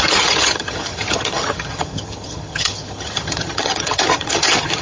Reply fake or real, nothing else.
fake